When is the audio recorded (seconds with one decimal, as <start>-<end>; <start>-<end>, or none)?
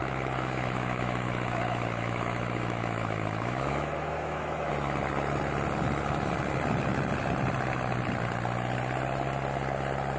4.7-10.2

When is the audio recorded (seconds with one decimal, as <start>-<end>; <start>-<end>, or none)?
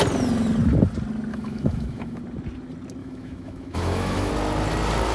0.0-1.3; 2.2-3.0; 4.3-5.1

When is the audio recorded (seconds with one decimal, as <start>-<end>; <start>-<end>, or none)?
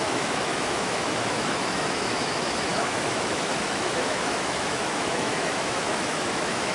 none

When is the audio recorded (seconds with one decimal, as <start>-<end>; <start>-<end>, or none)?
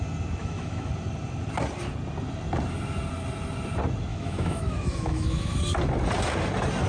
0.0-0.4; 0.9-4.1; 5.6-6.9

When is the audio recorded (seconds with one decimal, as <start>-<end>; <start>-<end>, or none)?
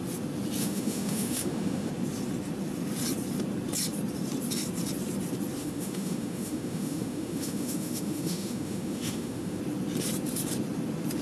0.0-0.6; 1.9-5.6; 9.6-11.2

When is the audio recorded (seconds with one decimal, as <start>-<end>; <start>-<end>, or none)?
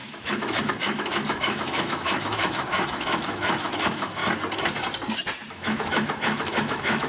4.2-5.5